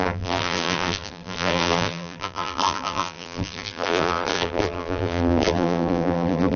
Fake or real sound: fake